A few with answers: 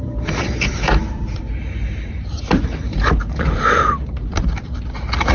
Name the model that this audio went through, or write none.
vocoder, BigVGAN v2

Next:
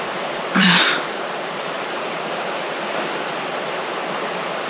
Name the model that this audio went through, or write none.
none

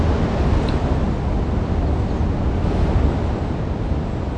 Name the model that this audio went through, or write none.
none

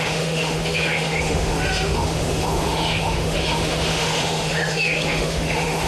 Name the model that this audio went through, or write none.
autoencoder, DAC-VAE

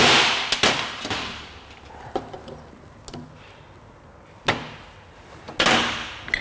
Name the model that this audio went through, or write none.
none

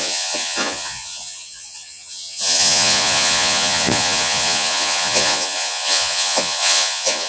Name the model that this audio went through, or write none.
vocoder, Vocos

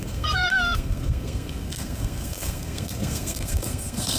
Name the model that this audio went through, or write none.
codec, SNAC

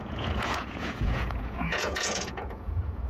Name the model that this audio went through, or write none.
vocoder, Vocos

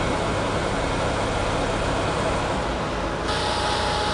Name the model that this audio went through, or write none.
none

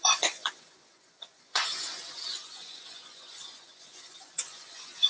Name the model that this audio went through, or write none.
vocoder, Vocos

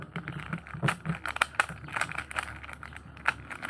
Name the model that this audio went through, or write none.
none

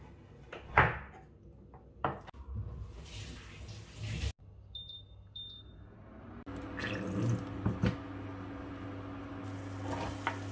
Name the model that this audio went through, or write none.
none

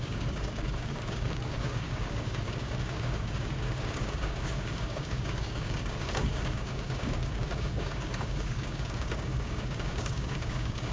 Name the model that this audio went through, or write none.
codec, DAC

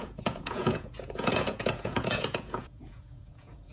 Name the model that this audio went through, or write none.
vocoder, Vocos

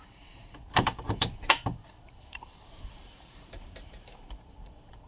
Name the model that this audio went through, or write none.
vocoder, BigVGAN v2